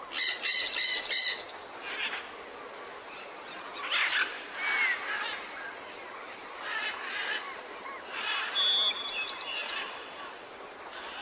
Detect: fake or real real